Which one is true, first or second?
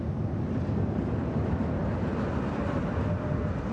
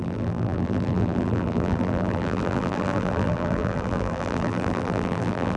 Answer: first